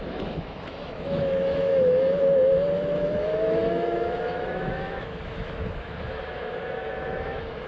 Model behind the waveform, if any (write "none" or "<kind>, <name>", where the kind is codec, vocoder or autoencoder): autoencoder, DAC-VAE